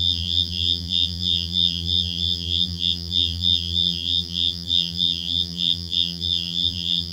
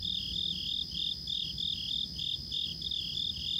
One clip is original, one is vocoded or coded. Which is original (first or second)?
second